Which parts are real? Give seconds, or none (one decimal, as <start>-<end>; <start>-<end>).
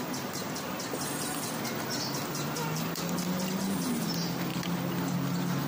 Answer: none